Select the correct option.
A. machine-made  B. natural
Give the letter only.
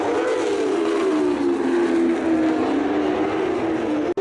B